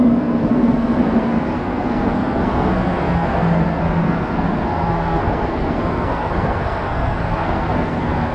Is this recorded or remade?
remade